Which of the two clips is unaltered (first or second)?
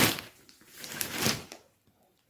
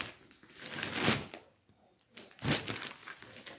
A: second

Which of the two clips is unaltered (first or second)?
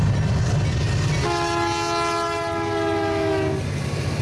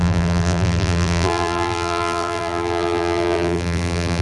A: first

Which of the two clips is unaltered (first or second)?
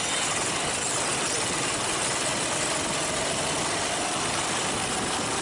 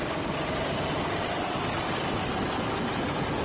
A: first